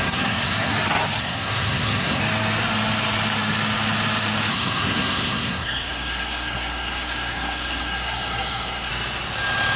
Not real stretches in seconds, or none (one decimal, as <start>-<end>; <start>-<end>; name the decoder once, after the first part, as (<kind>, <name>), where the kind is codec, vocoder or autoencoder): 0.0-0.7 (codec, SNAC); 1.2-2.2; 4.5-8.9